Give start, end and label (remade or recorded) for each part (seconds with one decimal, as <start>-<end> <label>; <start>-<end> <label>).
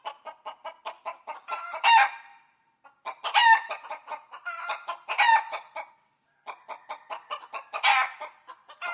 0.0-8.9 recorded